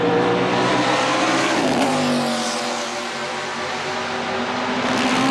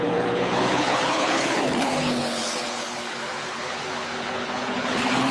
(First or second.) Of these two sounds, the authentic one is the first